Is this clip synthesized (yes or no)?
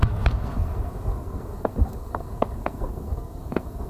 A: yes